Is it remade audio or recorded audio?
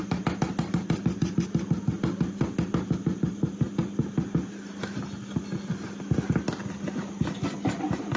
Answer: recorded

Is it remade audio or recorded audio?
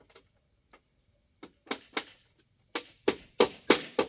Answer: recorded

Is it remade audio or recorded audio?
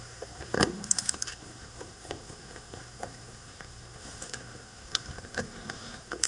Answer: remade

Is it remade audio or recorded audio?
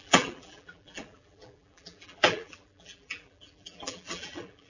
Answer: remade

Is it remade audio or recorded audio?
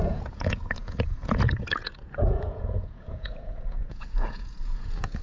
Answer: remade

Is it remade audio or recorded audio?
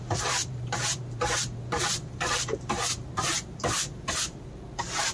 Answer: remade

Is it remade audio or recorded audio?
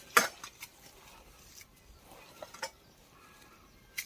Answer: recorded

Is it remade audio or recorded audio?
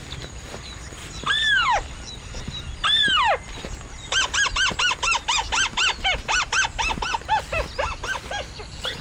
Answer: recorded